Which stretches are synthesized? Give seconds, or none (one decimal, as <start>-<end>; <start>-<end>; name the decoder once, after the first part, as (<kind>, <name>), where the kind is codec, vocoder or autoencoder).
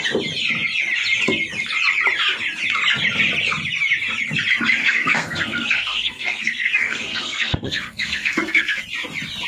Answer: 4.8-8.8 (codec, SNAC)